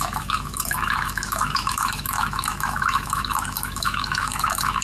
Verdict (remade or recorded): remade